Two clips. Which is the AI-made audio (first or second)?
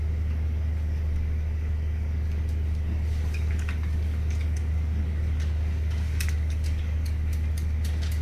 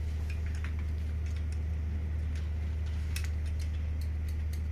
first